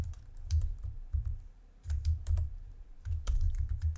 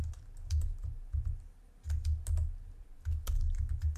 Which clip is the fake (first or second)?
first